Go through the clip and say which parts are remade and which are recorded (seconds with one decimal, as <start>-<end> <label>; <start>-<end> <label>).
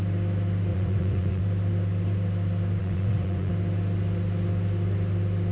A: 0.0-0.7 recorded; 0.7-1.4 remade; 1.4-2.8 recorded; 2.8-3.5 remade; 3.5-5.5 recorded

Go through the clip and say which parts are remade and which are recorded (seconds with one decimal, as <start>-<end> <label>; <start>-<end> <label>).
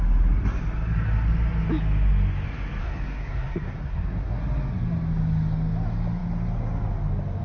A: 0.0-2.8 recorded; 2.8-4.4 remade; 4.4-7.4 recorded